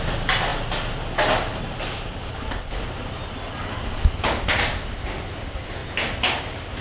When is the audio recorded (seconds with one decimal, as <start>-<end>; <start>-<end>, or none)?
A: 0.0-6.8

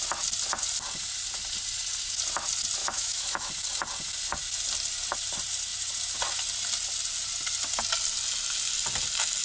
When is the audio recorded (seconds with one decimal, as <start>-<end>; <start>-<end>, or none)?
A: 0.0-2.8; 3.5-9.4

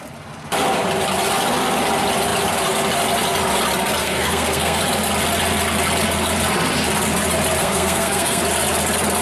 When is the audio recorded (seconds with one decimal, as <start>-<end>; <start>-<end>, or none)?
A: 0.0-4.0; 4.8-7.6; 8.4-9.2